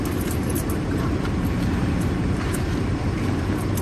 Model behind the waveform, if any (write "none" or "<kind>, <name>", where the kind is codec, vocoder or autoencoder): vocoder, BigVGAN v2